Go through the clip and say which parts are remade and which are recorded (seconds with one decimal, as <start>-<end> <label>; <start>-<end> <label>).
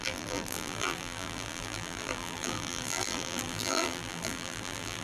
0.0-5.0 remade